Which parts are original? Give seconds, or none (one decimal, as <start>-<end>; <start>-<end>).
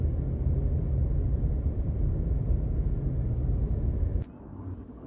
0.0-1.0; 2.1-5.1